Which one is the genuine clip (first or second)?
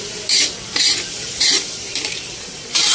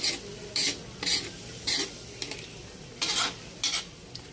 second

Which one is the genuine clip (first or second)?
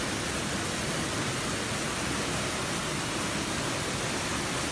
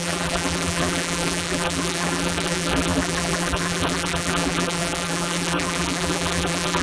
first